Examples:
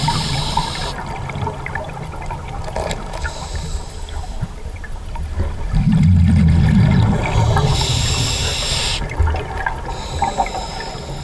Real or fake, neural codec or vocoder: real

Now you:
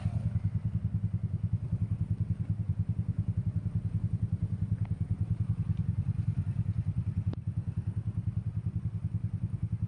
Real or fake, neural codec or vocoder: real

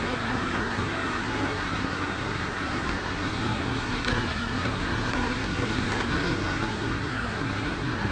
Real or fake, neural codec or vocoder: fake, codec, SNAC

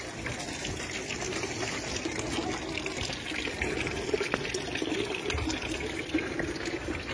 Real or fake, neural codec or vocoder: real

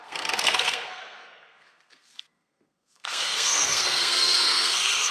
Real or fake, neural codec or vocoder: fake, codec, SNAC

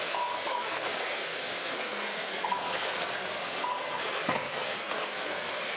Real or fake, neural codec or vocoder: fake, codec, SNAC